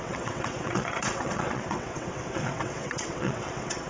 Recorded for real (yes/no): no